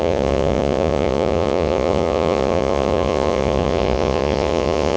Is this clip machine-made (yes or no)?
yes